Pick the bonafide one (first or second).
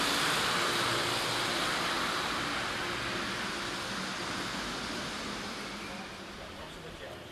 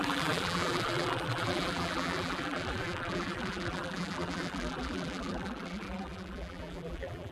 first